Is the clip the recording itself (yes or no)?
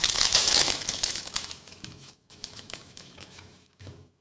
no